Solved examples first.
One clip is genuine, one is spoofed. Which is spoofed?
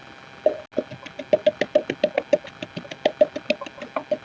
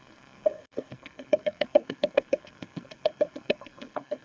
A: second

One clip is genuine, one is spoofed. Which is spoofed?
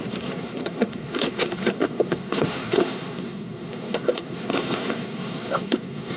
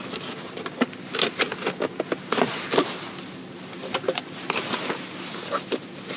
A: first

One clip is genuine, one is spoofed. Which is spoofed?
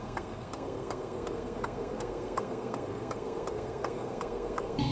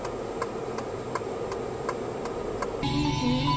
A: first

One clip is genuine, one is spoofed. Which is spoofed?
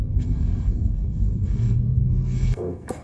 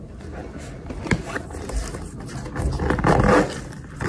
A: first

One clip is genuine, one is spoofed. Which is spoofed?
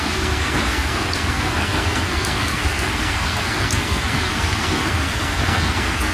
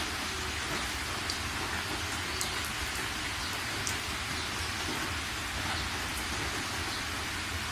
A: first